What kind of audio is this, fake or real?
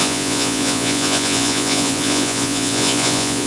fake